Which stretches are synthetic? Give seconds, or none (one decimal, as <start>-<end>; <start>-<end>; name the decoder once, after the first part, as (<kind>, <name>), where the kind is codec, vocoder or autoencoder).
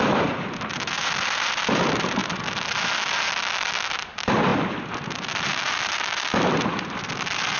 0.0-7.6 (vocoder, BigVGAN v2)